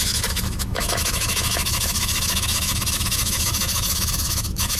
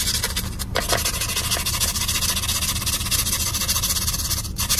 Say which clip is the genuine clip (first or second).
second